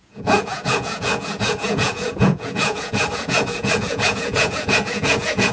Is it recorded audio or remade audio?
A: remade